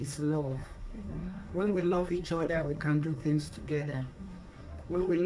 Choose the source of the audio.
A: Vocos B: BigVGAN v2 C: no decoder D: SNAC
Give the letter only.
D